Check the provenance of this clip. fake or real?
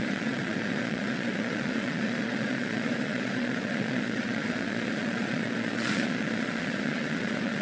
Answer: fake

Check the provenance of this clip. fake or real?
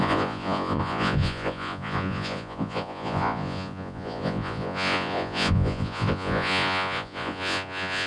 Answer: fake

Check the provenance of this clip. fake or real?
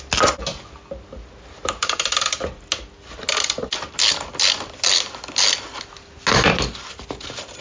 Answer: real